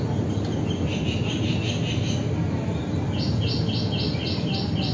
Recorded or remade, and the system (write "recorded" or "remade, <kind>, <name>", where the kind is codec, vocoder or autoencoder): recorded